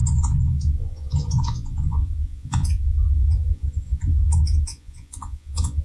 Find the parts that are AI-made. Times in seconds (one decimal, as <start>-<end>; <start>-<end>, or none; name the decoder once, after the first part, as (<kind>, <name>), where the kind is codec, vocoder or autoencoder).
0.0-5.8 (vocoder, Vocos)